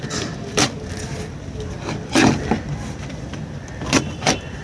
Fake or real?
real